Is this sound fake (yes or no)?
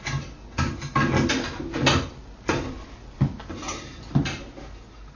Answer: no